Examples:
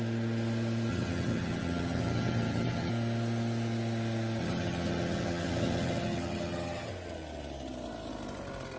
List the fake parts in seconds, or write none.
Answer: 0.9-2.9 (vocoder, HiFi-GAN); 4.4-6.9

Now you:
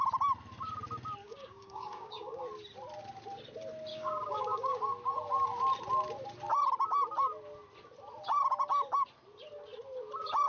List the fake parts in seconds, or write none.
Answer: 1.2-2.4 (codec, DAC); 3.9-4.8